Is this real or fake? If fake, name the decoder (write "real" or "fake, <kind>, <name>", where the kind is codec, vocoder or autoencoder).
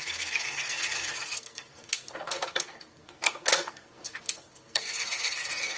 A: fake, codec, SNAC